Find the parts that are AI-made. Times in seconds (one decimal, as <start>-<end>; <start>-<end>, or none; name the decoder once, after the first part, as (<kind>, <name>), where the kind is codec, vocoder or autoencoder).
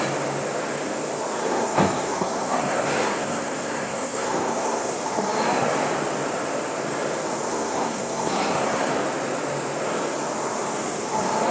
1.4-4.9 (codec, SNAC); 7.5-8.9